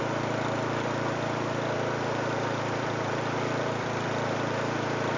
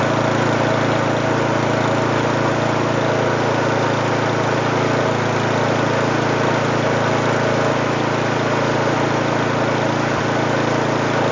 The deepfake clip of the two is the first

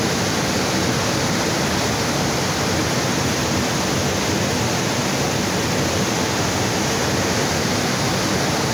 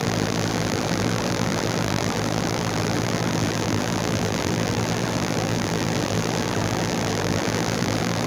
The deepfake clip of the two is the second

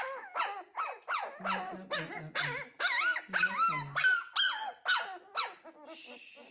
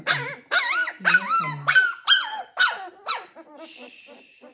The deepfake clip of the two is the second